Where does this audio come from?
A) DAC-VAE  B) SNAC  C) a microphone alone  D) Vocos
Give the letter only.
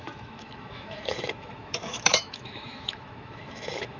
A